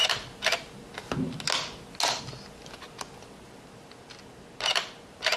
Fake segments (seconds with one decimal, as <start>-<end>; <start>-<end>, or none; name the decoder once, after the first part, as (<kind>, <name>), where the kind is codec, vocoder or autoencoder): none